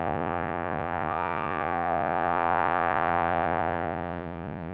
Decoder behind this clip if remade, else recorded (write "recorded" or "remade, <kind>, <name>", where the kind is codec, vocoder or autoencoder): remade, vocoder, Vocos